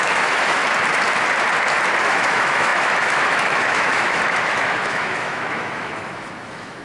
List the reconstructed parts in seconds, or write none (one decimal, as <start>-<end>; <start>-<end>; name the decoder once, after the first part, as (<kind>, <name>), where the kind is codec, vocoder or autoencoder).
0.0-0.6 (autoencoder, DAC-VAE); 2.0-6.8